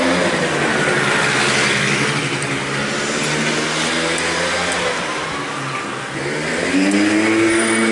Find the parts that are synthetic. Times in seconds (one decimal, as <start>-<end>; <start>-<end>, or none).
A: none